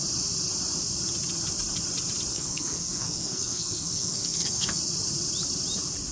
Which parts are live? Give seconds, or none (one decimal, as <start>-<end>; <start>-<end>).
0.0-2.3; 4.8-6.1